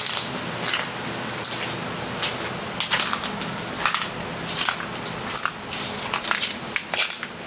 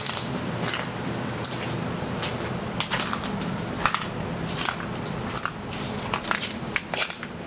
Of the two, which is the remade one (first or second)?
second